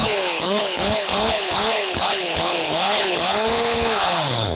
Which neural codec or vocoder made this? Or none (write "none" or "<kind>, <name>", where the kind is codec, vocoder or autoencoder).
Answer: codec, HILCodec